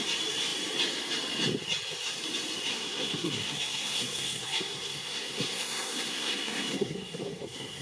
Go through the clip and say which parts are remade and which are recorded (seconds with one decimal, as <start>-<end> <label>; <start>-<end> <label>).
0.0-2.7 recorded; 2.7-7.8 remade